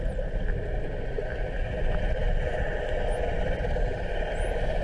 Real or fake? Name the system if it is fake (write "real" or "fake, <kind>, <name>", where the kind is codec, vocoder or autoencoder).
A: real